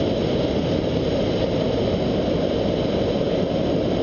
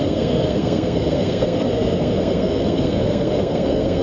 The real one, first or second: first